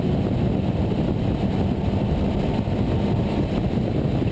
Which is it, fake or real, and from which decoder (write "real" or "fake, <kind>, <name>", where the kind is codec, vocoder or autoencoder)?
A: real